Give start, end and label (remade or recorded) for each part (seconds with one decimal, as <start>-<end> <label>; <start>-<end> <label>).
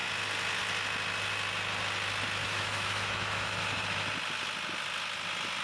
0.0-2.4 recorded; 2.4-4.1 remade; 4.1-5.6 recorded